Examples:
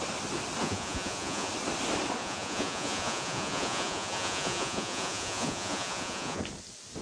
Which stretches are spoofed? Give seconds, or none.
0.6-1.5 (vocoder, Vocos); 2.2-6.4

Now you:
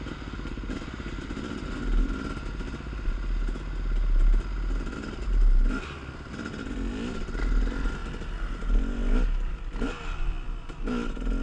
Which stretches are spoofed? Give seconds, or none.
none

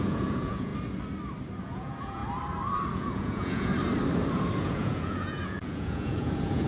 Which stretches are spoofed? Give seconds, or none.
0.0-0.7 (vocoder, Vocos); 1.6-2.2; 2.9-3.7; 4.6-6.7

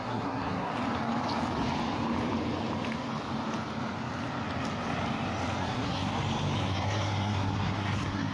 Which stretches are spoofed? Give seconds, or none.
0.0-0.7 (codec, SNAC); 5.6-6.1; 6.6-8.3

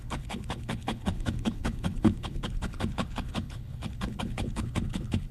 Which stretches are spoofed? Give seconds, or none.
0.0-5.3 (codec, HILCodec)

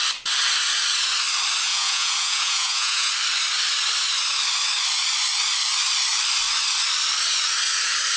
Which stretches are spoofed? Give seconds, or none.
1.7-3.1 (vocoder, Vocos)

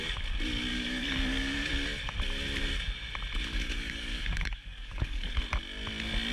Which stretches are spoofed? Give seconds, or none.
0.7-1.7 (codec, DAC); 3.5-5.4

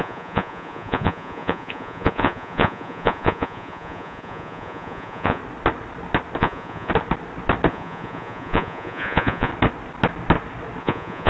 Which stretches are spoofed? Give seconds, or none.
0.0-5.4 (vocoder, Vocos); 6.4-6.9; 7.7-9.5; 10.8-11.3